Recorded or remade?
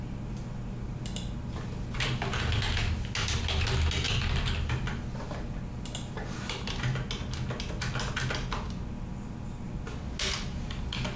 recorded